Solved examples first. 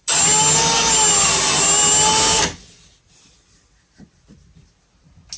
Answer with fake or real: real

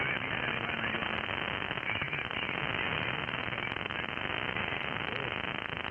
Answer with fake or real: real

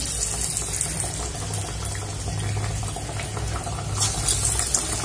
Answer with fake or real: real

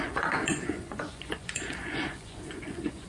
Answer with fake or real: fake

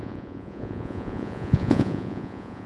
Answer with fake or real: fake